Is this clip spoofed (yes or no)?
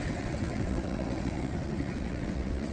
yes